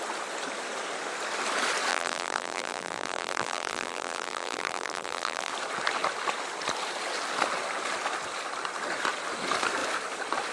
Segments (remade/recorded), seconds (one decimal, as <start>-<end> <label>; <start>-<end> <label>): 0.0-1.9 recorded; 1.9-5.5 remade; 5.5-10.5 recorded